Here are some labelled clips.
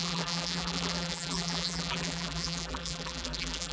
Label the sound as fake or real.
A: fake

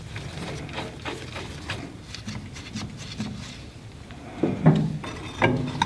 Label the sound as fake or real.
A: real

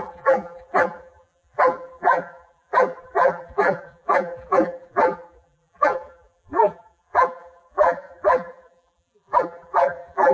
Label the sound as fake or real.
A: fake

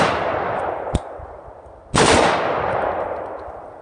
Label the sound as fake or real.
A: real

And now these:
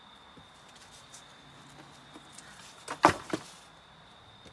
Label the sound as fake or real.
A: real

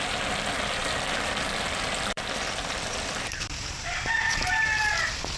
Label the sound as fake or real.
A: fake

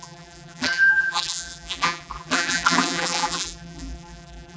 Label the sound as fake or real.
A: fake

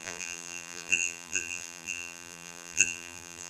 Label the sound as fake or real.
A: fake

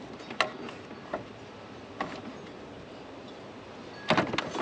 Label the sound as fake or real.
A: real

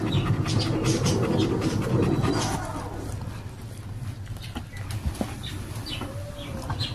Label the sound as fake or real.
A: real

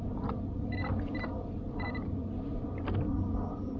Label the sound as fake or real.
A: real